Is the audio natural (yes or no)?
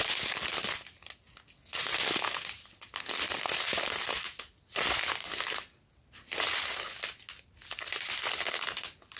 yes